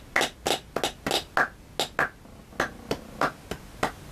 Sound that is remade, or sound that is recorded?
recorded